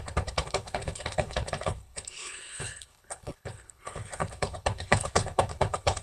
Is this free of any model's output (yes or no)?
no